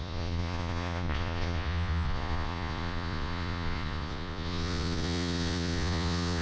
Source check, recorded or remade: remade